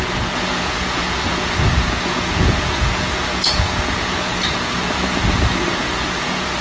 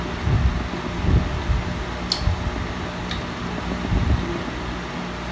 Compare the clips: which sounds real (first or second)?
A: second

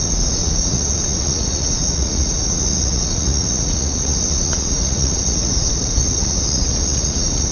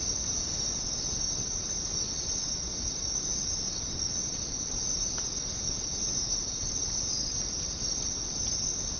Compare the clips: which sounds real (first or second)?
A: second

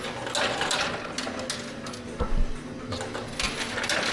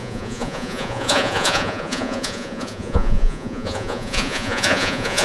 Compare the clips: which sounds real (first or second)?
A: first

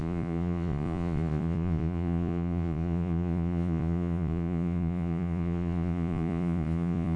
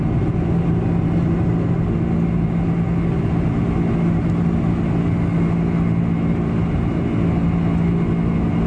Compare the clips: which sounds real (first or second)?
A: second